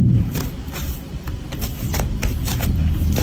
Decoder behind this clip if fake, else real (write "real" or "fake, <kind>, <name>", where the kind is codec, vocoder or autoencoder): real